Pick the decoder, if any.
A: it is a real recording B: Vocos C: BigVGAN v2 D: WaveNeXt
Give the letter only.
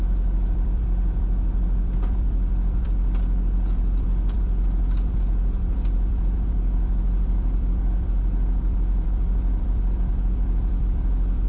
C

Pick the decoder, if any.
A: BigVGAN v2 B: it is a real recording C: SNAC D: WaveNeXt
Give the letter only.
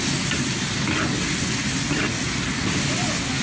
B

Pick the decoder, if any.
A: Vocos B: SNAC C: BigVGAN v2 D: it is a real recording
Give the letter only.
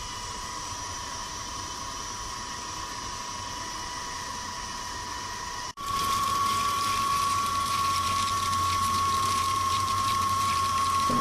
C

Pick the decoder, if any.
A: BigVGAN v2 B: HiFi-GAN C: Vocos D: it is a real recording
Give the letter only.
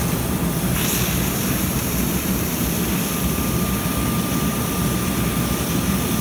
A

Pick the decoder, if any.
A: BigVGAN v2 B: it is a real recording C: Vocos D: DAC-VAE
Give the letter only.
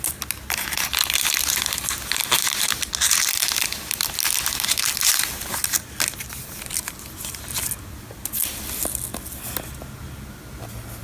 B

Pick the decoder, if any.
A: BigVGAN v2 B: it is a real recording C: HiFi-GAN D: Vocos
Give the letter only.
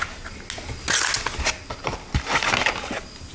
B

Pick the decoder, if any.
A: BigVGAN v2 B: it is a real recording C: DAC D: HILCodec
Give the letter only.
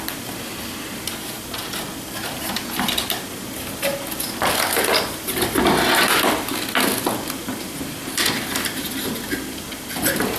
B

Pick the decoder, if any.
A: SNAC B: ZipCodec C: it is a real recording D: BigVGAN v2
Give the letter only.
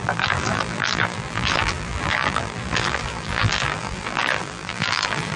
D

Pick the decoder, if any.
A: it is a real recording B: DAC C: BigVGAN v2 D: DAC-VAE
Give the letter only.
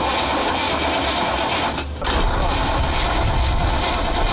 A